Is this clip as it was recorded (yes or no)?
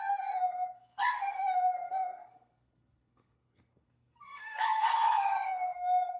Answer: no